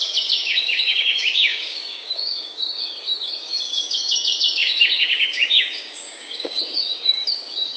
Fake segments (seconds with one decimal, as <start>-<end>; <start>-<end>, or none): 0.0-7.8